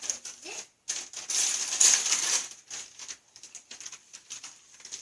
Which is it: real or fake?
real